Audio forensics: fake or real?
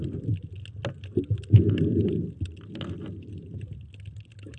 real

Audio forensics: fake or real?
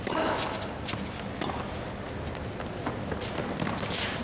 real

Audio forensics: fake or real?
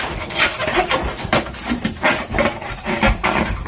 real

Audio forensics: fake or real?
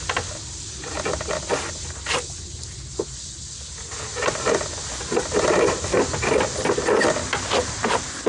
real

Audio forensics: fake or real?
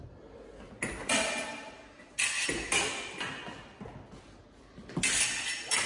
real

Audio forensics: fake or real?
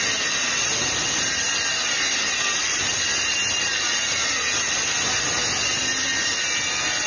real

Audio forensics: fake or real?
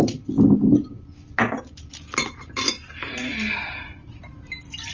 real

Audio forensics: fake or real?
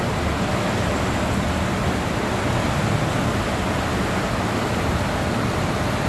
real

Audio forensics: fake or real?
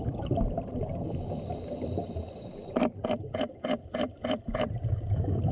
fake